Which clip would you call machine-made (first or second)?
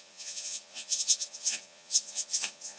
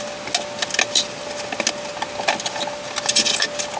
first